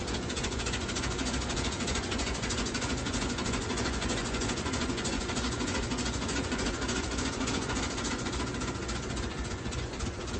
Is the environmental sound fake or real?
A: fake